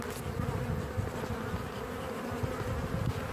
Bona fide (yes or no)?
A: yes